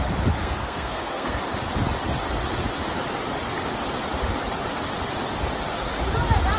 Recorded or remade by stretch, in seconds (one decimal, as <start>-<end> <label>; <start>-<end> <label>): 0.0-0.4 recorded; 0.4-1.4 remade; 1.4-6.6 recorded